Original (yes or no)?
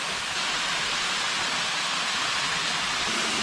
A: yes